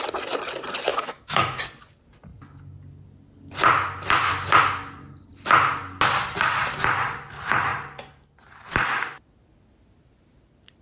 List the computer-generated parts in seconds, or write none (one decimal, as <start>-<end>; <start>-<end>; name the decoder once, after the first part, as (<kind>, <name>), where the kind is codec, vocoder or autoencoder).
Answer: 0.9-1.6 (autoencoder, DAC-VAE)